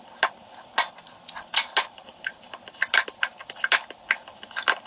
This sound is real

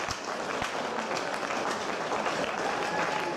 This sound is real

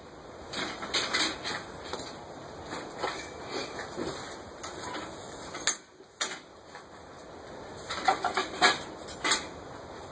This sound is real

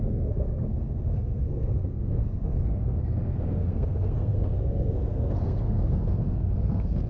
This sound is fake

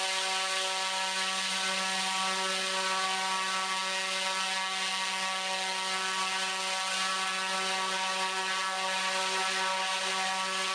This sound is real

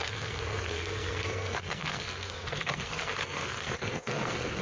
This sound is fake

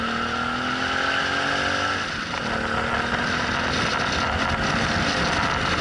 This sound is real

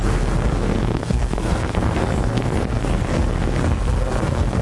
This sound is fake